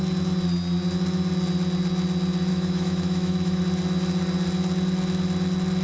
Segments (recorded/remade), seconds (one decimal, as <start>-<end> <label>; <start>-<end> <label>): 0.0-2.5 recorded; 2.5-3.6 remade; 3.6-5.8 recorded